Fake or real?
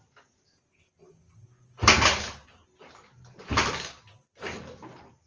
real